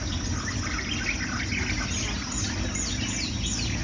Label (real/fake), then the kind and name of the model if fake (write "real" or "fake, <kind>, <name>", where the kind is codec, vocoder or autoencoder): real